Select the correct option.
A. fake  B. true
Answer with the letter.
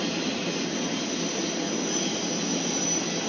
B